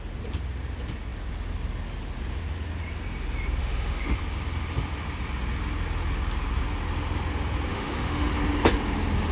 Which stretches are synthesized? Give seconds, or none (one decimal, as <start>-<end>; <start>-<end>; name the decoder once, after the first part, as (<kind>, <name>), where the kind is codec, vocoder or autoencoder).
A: 3.6-4.2 (autoencoder, DAC-VAE); 7.7-8.3